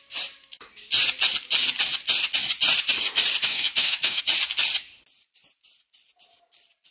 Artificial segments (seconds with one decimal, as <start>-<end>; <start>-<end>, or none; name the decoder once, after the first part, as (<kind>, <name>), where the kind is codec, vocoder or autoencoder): 3.5-4.2 (autoencoder, DAC-VAE)